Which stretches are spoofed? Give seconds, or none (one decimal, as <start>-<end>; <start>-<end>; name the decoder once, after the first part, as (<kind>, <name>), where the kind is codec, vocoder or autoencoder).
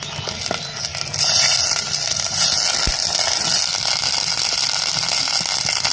none